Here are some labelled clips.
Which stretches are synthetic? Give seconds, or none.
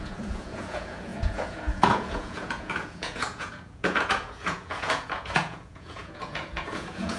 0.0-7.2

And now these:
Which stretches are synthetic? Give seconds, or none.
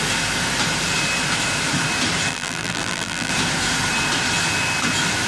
2.3-3.3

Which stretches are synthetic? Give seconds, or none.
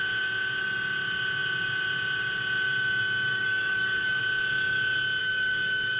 3.3-4.2; 5.2-6.0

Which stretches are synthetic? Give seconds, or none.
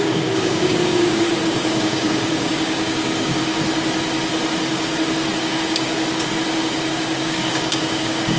0.0-3.4; 5.4-6.3; 6.9-8.4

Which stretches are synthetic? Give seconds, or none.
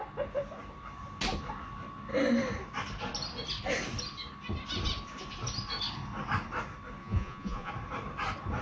7.0-7.7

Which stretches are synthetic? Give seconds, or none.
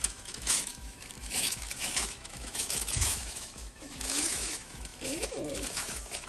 0.0-6.3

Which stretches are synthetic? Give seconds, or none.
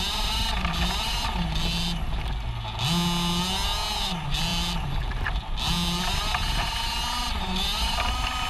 none